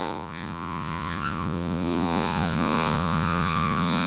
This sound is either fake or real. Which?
fake